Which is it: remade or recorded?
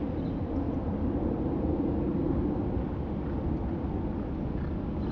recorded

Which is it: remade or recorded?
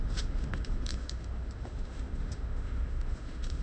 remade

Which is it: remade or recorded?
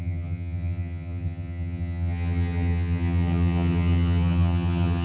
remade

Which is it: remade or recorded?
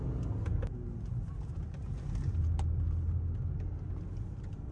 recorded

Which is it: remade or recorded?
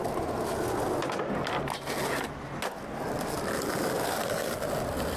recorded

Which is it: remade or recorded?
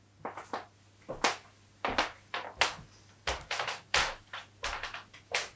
recorded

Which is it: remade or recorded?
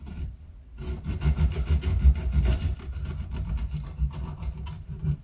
recorded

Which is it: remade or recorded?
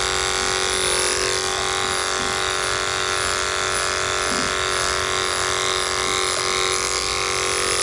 recorded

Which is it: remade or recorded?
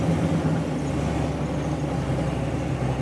recorded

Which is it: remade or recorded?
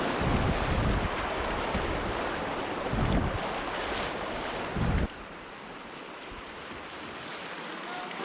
recorded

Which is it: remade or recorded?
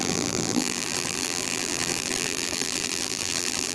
remade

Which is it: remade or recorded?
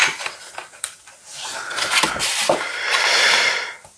recorded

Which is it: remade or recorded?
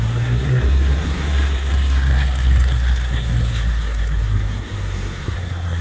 remade